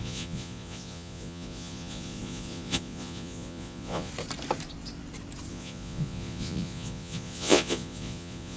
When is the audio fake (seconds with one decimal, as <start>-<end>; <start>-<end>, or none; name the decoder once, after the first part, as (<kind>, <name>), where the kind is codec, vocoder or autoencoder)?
0.0-4.1 (vocoder, Vocos); 5.5-8.6